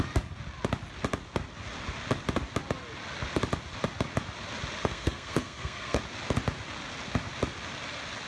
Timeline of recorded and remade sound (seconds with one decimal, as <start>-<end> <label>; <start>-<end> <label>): 0.0-4.8 recorded; 4.8-6.0 remade; 6.0-8.3 recorded